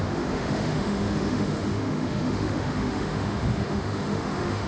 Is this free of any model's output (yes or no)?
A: no